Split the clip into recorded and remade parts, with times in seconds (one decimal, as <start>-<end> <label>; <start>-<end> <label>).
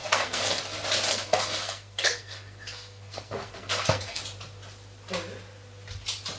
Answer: 0.0-0.6 remade; 0.6-1.1 recorded; 1.1-4.2 remade; 4.2-6.4 recorded